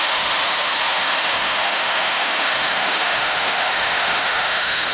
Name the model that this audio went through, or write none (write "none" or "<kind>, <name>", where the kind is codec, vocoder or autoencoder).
autoencoder, DAC-VAE